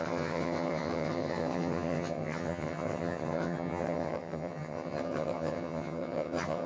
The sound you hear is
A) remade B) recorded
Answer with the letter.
A